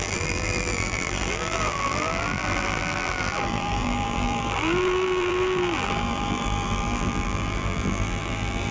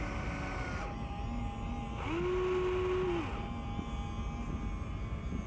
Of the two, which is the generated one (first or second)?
first